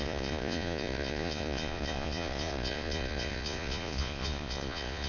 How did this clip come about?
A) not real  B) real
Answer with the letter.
A